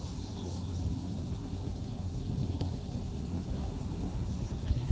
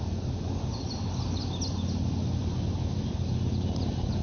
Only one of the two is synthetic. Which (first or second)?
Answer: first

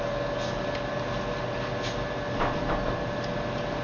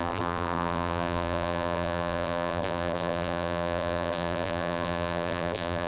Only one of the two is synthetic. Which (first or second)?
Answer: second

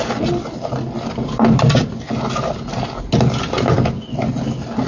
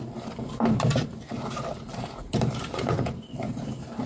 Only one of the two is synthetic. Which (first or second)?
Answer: second